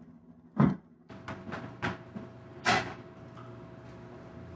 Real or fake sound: real